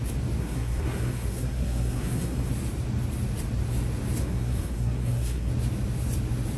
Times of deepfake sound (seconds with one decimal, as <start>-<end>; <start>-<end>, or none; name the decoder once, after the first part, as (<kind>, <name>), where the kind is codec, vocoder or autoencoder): 0.4-2.5 (codec, SNAC); 4.2-5.5